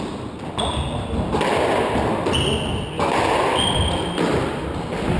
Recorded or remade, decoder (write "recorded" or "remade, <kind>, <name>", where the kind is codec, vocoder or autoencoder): recorded